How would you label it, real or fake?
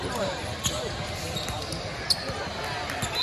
real